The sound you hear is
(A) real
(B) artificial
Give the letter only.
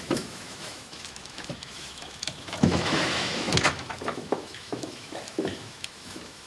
B